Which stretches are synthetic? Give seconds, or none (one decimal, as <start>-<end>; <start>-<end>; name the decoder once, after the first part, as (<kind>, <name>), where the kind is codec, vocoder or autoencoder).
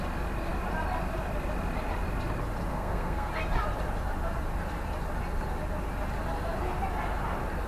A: 2.7-3.3 (codec, SNAC)